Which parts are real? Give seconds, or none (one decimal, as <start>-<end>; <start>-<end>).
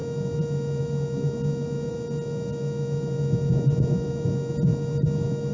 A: 0.0-5.5